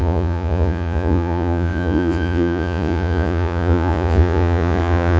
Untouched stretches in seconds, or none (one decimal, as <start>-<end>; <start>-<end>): none